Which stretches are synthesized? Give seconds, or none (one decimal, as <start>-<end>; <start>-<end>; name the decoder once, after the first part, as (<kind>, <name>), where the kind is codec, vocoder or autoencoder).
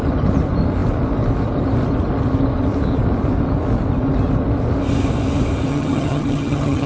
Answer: 5.7-6.9 (vocoder, HiFi-GAN)